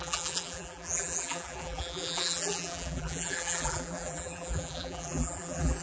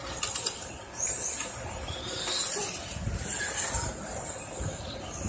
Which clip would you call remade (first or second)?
first